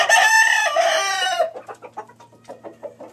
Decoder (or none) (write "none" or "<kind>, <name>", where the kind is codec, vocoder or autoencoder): none